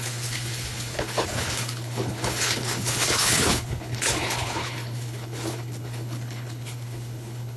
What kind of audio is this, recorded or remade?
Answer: remade